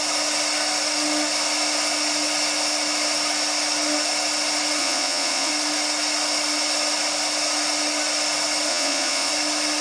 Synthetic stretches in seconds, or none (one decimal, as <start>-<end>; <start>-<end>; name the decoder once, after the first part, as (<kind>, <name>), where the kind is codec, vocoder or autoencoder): 4.8-5.5 (vocoder, Vocos); 8.7-9.3